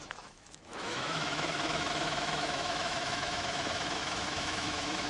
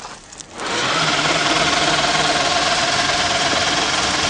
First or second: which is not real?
first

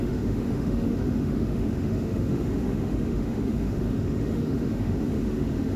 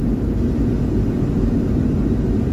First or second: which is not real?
first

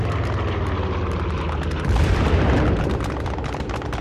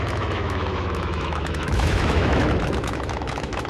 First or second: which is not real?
second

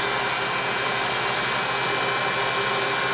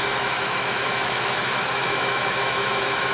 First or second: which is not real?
second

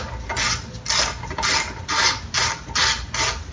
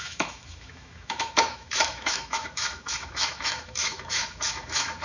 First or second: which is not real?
second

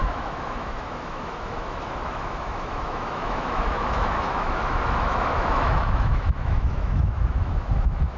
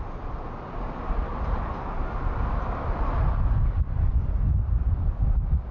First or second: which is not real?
first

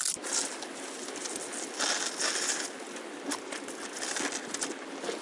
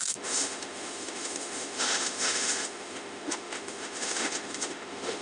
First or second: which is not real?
second